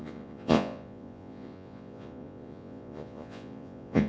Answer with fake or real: fake